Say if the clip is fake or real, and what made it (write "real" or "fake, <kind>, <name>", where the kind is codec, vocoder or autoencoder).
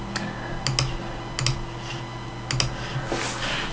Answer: real